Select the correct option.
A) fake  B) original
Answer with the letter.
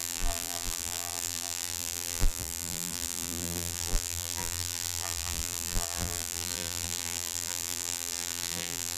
A